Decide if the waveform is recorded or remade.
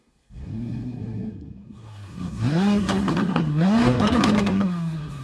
remade